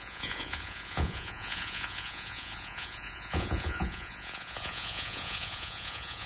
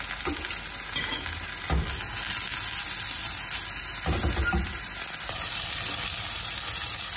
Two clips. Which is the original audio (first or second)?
second